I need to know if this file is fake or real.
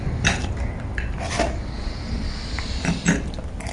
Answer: real